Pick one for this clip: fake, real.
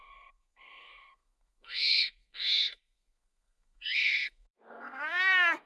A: fake